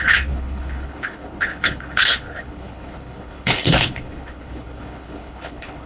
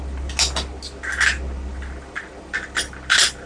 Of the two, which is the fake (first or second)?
first